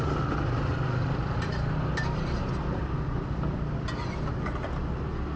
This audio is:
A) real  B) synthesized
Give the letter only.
A